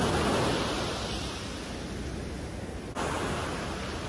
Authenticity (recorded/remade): recorded